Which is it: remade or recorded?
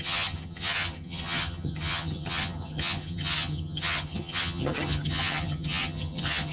remade